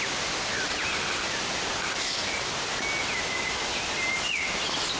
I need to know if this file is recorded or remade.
recorded